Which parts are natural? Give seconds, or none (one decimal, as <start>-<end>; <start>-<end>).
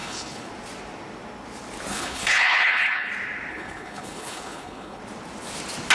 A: 0.5-1.9; 3.1-3.5; 5.0-5.9